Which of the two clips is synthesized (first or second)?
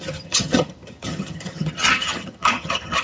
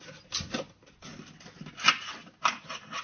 first